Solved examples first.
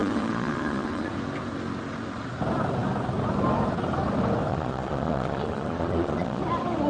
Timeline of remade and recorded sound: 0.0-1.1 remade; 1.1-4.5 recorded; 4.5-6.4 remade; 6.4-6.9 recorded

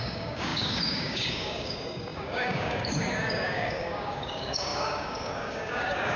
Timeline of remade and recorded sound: 0.0-6.2 remade

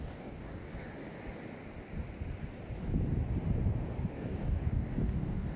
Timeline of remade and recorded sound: 0.0-0.7 remade; 0.7-4.1 recorded; 4.1-5.6 remade

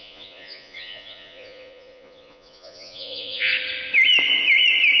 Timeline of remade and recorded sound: 0.0-3.5 remade; 3.5-5.0 recorded

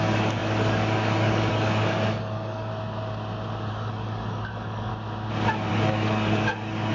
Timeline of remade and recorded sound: 0.0-2.7 remade; 2.7-3.7 recorded; 3.7-4.9 remade; 4.9-5.7 recorded; 5.7-6.9 remade

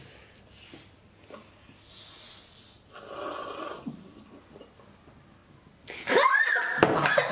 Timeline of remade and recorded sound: 0.0-7.3 recorded